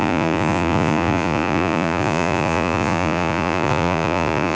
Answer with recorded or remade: remade